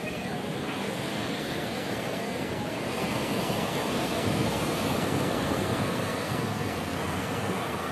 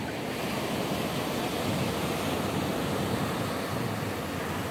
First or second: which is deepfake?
first